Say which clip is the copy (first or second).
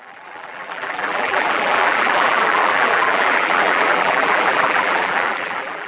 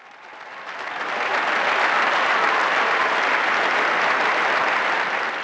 first